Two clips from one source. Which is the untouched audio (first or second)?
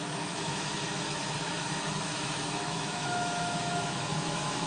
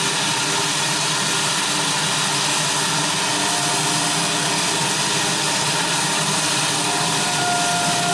second